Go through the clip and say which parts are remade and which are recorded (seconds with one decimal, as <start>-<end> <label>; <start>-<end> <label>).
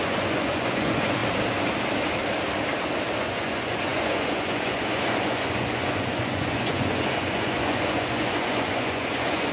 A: 0.0-1.2 remade; 1.2-3.2 recorded; 3.2-9.5 remade